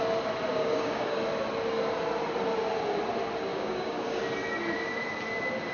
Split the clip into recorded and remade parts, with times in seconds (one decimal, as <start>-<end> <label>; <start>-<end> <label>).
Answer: 0.0-0.5 recorded; 0.5-1.2 remade; 1.2-3.5 recorded; 3.5-4.2 remade; 4.2-5.7 recorded